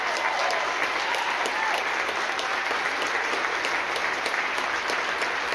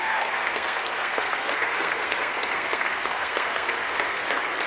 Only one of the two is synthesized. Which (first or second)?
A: second